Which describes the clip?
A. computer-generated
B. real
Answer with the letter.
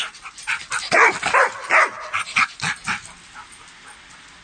B